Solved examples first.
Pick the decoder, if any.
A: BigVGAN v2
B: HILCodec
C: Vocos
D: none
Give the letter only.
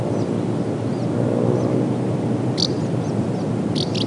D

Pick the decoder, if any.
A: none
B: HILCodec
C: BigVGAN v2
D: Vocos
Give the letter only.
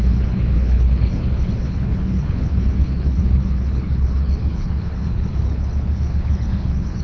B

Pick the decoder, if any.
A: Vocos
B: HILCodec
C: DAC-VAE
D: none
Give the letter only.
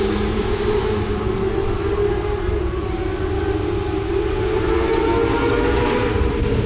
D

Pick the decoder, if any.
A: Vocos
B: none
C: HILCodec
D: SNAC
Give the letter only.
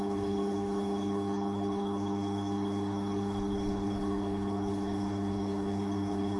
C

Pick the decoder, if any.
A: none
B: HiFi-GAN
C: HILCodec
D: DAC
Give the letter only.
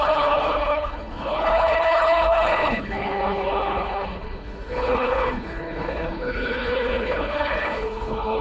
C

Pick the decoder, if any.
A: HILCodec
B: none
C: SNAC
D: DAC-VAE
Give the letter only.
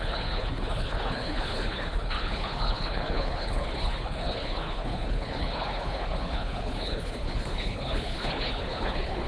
A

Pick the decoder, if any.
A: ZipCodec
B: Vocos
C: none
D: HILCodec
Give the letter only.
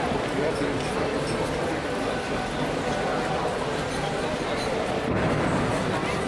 C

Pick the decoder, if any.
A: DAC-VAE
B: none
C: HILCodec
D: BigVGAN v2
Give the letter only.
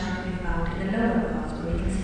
B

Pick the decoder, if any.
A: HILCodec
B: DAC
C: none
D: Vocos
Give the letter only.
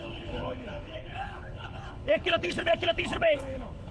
A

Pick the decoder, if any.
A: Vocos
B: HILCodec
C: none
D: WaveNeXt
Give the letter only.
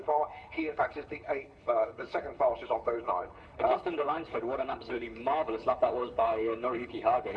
B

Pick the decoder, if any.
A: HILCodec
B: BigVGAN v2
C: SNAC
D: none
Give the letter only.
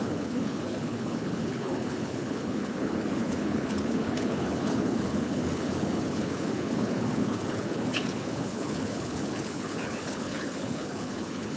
A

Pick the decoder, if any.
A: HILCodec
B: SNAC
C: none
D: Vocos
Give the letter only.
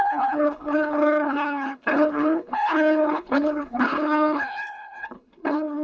A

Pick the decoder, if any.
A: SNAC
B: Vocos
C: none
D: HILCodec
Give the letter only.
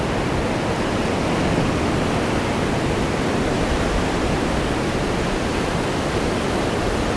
C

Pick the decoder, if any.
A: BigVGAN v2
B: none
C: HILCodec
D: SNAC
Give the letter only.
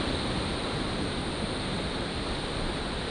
B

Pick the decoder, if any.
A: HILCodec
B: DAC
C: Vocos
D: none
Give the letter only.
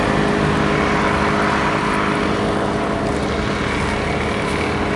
D